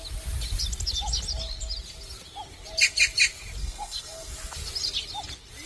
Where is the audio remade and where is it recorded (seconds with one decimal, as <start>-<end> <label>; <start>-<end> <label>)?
0.0-3.6 recorded; 3.6-4.3 remade; 4.3-5.7 recorded